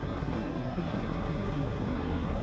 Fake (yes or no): yes